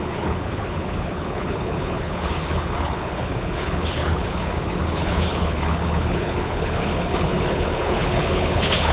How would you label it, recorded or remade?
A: remade